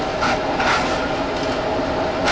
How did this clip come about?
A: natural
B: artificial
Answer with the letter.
A